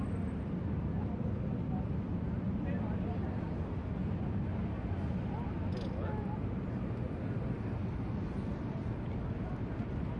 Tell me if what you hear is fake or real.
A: real